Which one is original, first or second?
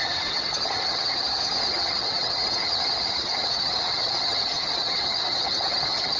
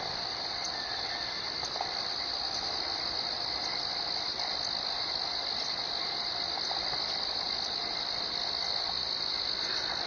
second